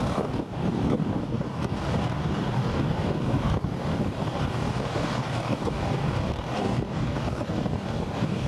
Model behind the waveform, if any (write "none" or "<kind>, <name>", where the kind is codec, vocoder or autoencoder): codec, DAC